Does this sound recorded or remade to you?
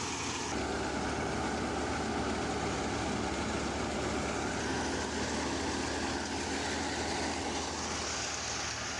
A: recorded